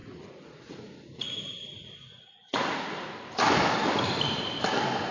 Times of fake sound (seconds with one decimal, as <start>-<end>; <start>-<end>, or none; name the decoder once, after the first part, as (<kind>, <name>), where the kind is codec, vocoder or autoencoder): 0.0-3.1 (vocoder, Vocos)